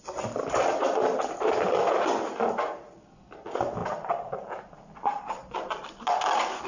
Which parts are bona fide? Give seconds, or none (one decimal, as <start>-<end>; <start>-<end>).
0.0-6.7